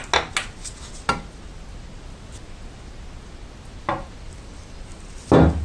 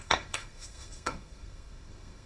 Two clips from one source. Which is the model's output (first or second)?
second